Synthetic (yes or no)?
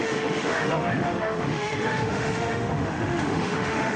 yes